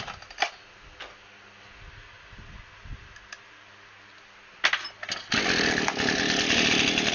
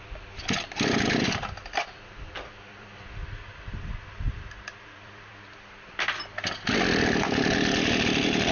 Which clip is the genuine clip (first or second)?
first